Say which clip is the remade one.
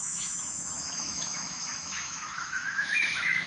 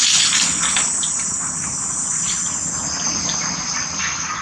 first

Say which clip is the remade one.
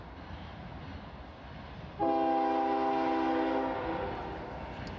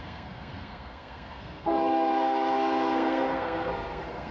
second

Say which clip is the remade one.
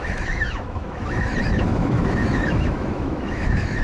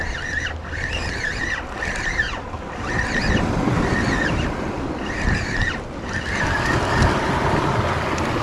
first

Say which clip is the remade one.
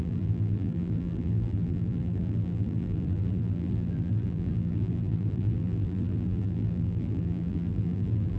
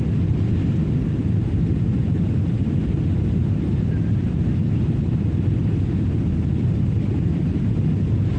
first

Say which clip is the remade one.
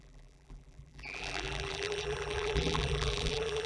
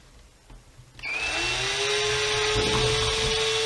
first